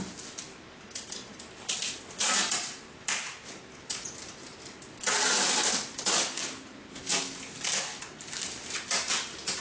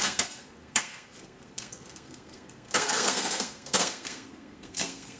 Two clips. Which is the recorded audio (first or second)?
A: first